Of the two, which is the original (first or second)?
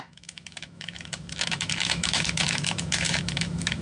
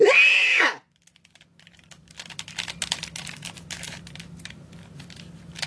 second